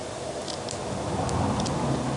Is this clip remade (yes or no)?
no